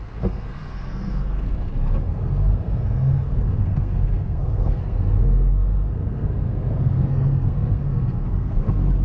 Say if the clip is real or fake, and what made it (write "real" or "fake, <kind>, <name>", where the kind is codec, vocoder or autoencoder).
fake, codec, SNAC